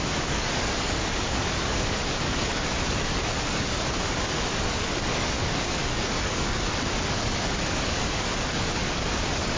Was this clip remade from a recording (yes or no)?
yes